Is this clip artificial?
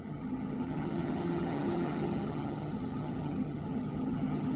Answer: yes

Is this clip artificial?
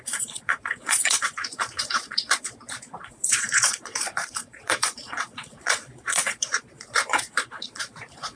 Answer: yes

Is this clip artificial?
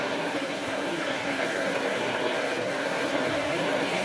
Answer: yes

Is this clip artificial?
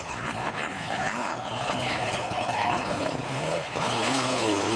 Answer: yes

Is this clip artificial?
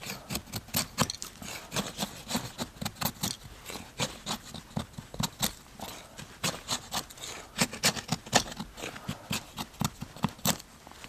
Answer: no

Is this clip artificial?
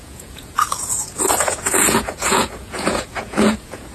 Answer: yes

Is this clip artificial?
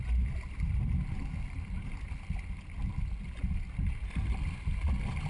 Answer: no